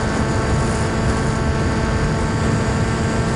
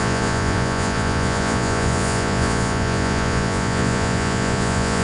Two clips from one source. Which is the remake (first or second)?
second